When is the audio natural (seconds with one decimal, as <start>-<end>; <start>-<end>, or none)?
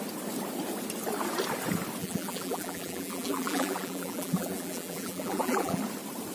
0.0-2.0; 5.8-6.3